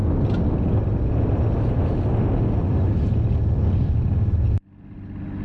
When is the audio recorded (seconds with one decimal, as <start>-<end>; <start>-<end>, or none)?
0.0-5.4